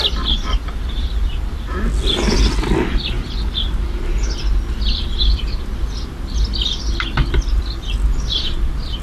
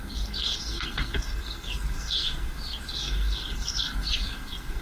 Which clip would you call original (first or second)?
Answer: first